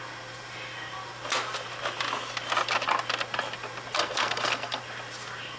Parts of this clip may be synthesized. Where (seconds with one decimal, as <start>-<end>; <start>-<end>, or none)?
4.0-4.8